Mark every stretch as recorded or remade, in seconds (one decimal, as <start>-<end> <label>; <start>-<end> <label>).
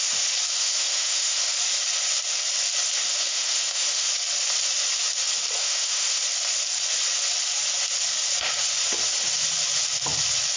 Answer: 0.0-0.5 recorded; 0.5-1.5 remade; 1.5-3.1 recorded; 3.1-4.1 remade; 4.1-5.6 recorded; 5.6-6.2 remade; 6.2-10.6 recorded